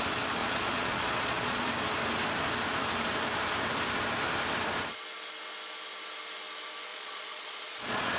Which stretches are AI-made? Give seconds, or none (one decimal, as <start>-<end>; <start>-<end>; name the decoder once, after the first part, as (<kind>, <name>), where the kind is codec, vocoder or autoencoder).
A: 0.4-1.7 (vocoder, Vocos); 6.9-8.2